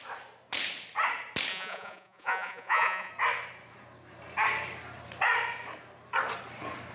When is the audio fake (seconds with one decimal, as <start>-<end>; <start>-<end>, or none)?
1.5-3.1